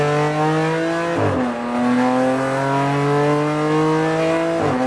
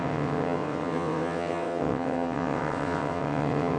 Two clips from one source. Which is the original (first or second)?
first